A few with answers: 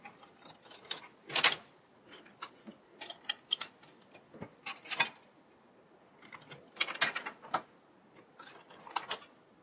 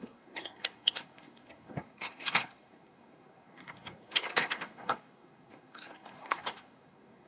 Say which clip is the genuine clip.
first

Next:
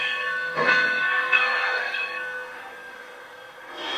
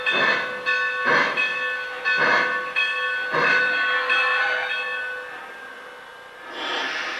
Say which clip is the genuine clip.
second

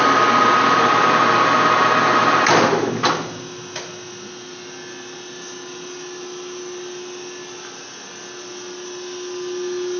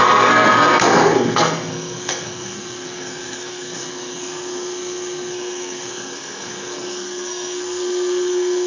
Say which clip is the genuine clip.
first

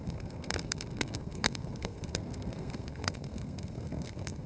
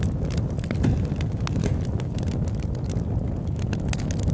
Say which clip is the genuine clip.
second